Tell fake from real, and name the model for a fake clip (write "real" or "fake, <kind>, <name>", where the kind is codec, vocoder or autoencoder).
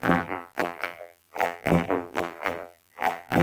fake, vocoder, BigVGAN v2